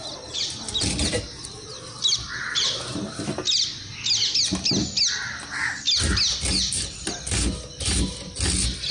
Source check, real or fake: real